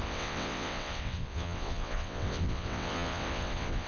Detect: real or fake fake